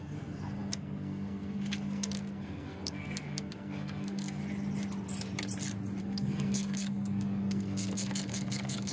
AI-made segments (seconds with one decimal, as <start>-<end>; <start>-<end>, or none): 0.0-4.4; 6.0-8.9